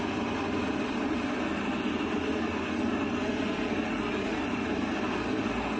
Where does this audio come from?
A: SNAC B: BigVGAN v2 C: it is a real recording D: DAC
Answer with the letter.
C